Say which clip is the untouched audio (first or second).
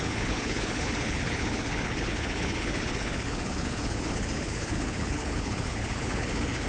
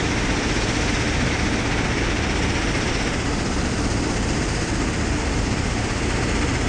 second